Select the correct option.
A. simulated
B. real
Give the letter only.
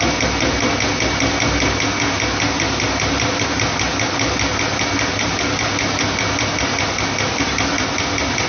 B